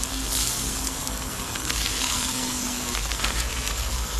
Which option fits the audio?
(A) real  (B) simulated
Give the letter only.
B